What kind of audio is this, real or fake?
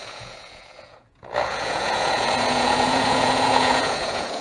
fake